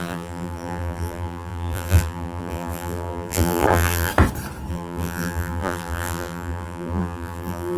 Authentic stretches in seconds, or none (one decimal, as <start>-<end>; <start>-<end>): 4.1-4.7

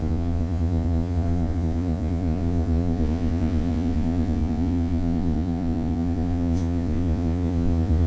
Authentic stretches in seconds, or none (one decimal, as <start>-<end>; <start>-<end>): none

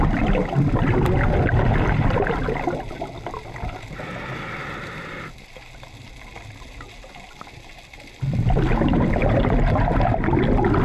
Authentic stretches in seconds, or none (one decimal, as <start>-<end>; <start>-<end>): 0.0-4.6; 5.5-10.8

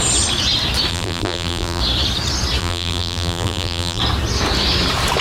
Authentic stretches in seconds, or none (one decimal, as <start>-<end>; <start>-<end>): 0.0-0.9; 1.8-2.6; 4.0-5.2

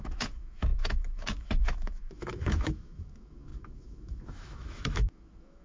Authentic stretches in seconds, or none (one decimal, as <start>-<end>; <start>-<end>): none

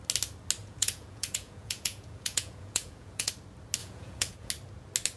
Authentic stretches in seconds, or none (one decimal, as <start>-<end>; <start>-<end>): 0.0-0.6; 3.3-3.8; 4.5-5.2

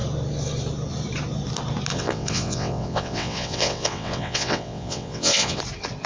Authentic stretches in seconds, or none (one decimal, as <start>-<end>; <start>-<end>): 0.0-1.9; 5.6-6.1